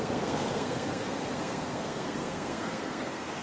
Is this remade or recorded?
remade